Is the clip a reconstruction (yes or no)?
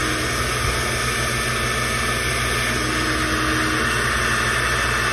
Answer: no